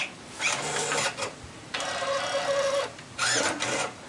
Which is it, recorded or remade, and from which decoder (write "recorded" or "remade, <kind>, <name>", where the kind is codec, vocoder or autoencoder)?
recorded